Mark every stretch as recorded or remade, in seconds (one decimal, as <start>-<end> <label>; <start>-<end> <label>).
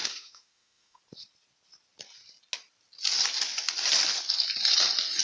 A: 0.0-1.0 remade; 1.0-5.2 recorded